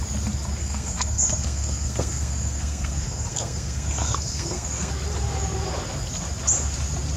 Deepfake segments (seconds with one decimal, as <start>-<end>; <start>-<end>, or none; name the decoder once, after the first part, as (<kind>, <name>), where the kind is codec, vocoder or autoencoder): 0.6-4.9 (codec, SNAC)